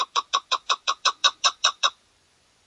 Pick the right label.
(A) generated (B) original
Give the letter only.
A